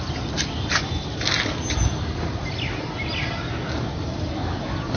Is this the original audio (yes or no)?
yes